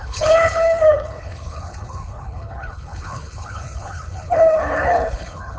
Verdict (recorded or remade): remade